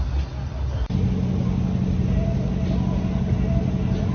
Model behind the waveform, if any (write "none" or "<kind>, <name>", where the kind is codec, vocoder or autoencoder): none